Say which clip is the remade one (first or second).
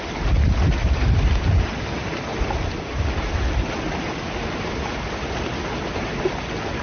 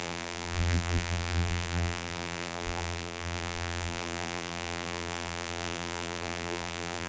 second